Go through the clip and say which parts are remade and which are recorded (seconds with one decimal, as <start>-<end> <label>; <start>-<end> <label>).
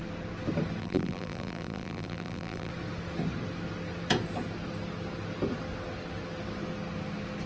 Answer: 0.0-0.8 recorded; 0.8-2.7 remade; 2.7-7.5 recorded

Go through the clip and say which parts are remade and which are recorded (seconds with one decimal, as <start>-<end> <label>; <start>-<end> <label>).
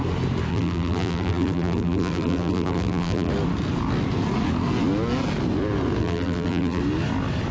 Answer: 0.0-0.5 recorded; 0.5-3.3 remade; 3.3-6.0 recorded; 6.0-6.8 remade; 6.8-7.5 recorded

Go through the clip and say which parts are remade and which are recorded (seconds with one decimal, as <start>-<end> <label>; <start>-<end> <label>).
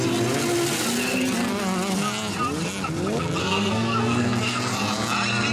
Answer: 0.0-3.4 recorded; 3.4-4.6 remade; 4.6-5.5 recorded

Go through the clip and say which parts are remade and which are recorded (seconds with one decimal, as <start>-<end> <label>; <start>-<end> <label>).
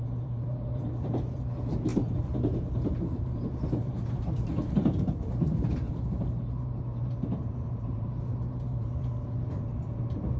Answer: 0.0-10.4 remade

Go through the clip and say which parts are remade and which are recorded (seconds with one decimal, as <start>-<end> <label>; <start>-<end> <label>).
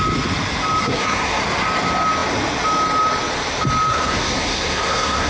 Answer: 0.0-0.8 recorded; 0.8-1.4 remade; 1.4-3.9 recorded; 3.9-5.3 remade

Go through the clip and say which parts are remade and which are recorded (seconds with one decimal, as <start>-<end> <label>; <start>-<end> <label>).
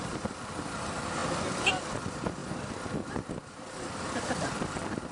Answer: 0.0-5.1 recorded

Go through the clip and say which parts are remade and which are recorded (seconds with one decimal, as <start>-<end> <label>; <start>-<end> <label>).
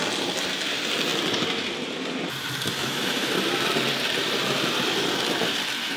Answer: 0.0-2.8 recorded; 2.8-3.3 remade; 3.3-6.0 recorded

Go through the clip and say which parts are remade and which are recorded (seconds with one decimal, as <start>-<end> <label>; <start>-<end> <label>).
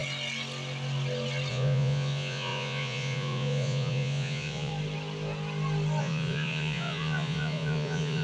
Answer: 0.0-1.5 recorded; 1.5-4.7 remade; 4.7-6.0 recorded; 6.0-8.2 remade